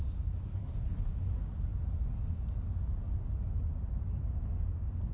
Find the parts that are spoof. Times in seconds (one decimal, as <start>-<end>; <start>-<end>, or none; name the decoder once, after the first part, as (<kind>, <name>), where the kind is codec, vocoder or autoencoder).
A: 0.5-1.1 (codec, HILCodec)